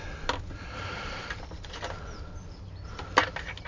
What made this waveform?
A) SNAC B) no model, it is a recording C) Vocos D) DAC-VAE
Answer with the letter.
B